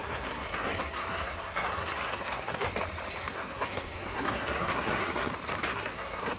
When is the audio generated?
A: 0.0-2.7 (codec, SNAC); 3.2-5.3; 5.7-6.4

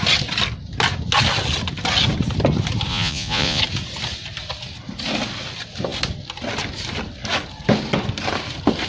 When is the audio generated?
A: 2.9-3.6 (vocoder, Vocos)

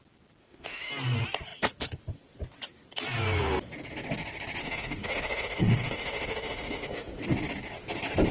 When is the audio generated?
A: 0.4-0.9 (autoencoder, DAC-VAE); 4.6-7.1

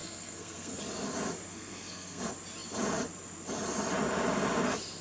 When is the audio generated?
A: 0.0-0.8 (codec, SNAC); 1.5-2.2

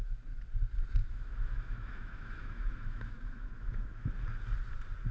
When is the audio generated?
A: 1.0-4.1 (autoencoder, DAC-VAE)